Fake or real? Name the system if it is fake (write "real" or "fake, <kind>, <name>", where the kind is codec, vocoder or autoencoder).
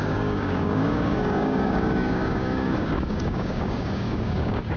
fake, codec, DAC